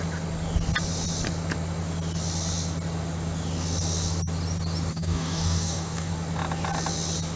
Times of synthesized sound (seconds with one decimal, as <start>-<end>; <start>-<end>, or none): 4.9-6.1